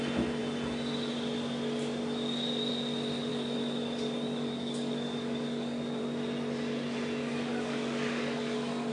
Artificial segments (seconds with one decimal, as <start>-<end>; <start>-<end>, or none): 3.3-6.0; 7.2-8.9